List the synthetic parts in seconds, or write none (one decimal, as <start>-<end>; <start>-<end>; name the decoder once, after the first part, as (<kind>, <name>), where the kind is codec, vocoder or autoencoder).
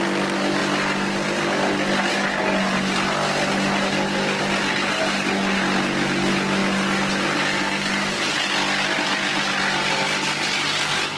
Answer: none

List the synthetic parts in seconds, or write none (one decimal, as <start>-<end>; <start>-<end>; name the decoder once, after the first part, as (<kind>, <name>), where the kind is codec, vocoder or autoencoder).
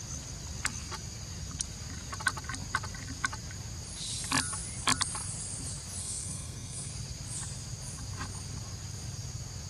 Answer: 6.0-6.9 (codec, SNAC)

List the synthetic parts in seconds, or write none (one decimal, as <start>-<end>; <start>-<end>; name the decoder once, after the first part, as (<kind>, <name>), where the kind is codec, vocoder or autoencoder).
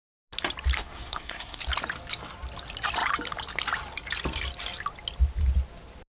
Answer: 0.8-1.6 (codec, SNAC)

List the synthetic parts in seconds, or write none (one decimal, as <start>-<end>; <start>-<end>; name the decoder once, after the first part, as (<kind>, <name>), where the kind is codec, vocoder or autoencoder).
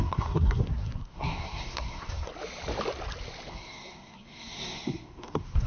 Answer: 0.0-2.3 (codec, SNAC); 3.5-5.7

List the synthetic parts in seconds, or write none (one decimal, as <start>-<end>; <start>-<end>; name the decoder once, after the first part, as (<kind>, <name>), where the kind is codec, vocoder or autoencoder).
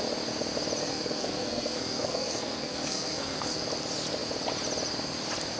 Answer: 0.8-3.6 (codec, SNAC)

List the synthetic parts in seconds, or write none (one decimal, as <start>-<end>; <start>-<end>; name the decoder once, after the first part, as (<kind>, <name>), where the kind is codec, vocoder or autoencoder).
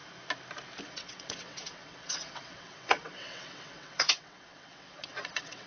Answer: 0.8-5.7 (vocoder, WaveNeXt)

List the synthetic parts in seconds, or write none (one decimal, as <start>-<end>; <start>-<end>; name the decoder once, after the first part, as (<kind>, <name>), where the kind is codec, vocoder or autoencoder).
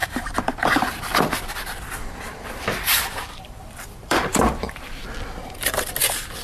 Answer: 0.0-0.9 (vocoder, BigVGAN v2); 2.7-5.0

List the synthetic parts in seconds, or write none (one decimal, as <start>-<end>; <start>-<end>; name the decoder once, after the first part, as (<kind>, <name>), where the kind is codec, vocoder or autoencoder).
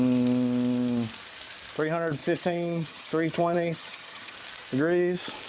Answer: 2.2-4.3 (vocoder, HiFi-GAN)